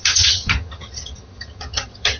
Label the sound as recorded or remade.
remade